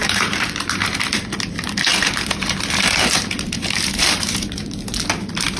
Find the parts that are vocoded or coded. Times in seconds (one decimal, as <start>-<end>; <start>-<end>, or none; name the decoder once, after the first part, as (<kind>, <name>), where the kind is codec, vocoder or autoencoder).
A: 0.0-1.1 (vocoder, BigVGAN v2); 1.9-4.5